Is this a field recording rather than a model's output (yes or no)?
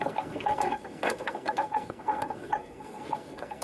no